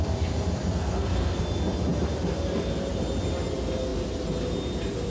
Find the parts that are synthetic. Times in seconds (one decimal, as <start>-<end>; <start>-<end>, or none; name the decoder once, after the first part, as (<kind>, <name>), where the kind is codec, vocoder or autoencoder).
0.7-1.4 (codec, SNAC)